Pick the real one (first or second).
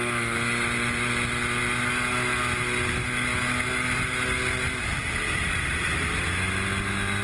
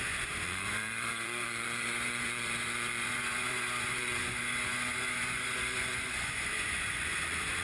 first